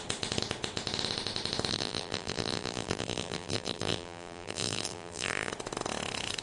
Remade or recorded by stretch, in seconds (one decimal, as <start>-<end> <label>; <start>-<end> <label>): 0.0-1.7 recorded; 1.7-5.5 remade; 5.5-6.4 recorded